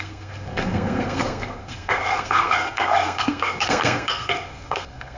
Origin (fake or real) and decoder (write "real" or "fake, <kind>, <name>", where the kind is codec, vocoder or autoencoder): fake, codec, SNAC